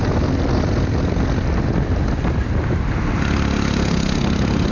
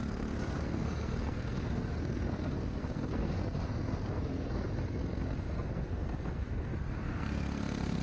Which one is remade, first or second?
second